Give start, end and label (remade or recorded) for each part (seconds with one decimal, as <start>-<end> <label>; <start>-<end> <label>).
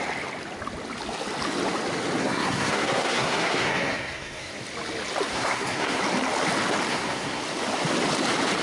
0.0-2.2 recorded; 2.2-4.5 remade; 4.5-5.3 recorded; 5.3-6.0 remade; 6.0-6.9 recorded; 6.9-7.4 remade; 7.4-8.6 recorded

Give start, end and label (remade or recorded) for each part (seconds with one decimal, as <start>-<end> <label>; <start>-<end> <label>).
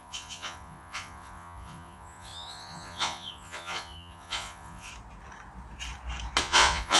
0.0-4.9 remade; 4.9-6.4 recorded; 6.4-7.0 remade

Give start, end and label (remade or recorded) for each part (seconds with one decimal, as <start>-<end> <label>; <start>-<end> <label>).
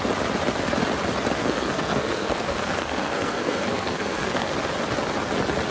0.0-1.4 recorded; 1.4-4.5 remade; 4.5-5.7 recorded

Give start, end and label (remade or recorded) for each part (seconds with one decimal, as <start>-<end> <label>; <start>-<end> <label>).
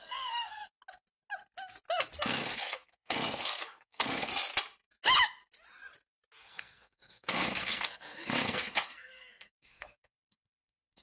0.0-0.6 remade; 0.6-2.2 recorded; 2.2-4.3 remade; 4.3-6.4 recorded; 6.4-11.0 remade